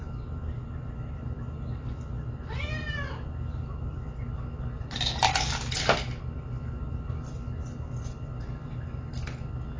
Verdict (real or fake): real